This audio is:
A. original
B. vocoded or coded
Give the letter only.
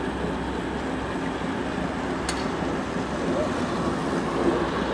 A